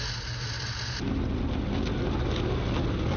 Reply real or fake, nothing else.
real